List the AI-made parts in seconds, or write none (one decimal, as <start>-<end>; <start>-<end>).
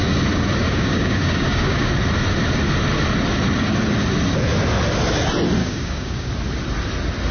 0.6-1.9; 5.6-6.3